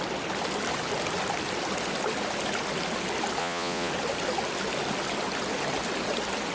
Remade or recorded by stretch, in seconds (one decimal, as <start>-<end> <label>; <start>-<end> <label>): 0.0-3.4 recorded; 3.4-3.9 remade; 3.9-6.5 recorded